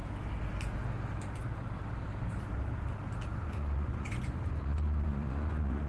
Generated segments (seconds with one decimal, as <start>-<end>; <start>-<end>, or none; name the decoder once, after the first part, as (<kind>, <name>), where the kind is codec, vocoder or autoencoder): 3.4-5.9 (vocoder, Vocos)